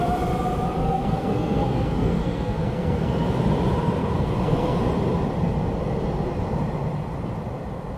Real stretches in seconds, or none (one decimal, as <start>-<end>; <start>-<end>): 0.0-0.8; 3.4-4.0; 4.8-8.0